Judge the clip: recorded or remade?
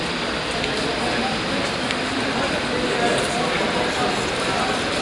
recorded